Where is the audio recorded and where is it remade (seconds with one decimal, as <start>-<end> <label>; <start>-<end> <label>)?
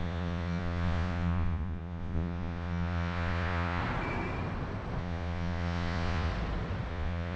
0.0-3.8 remade; 3.8-5.0 recorded; 5.0-6.3 remade; 6.3-6.9 recorded; 6.9-7.4 remade